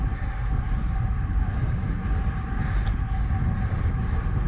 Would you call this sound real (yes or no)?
yes